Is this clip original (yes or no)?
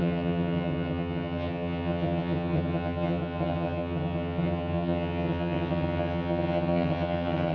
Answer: no